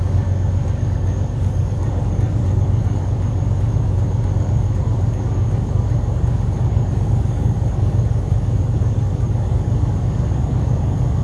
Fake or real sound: fake